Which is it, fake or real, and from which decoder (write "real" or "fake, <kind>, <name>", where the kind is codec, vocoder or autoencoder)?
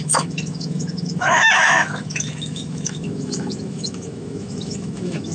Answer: fake, autoencoder, DAC-VAE